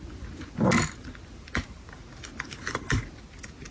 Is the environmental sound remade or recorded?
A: recorded